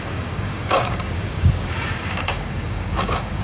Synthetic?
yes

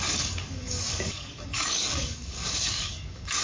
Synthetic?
yes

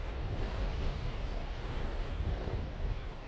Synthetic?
yes